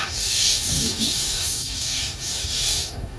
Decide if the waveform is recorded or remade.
remade